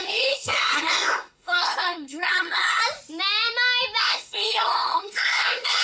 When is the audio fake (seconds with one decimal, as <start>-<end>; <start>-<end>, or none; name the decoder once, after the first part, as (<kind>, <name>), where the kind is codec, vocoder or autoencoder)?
0.0-2.8 (codec, SNAC); 4.0-5.8